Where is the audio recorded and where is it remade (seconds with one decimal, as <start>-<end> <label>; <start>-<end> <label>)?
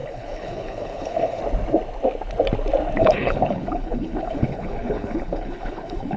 0.0-1.4 remade; 1.4-3.0 recorded; 3.0-6.2 remade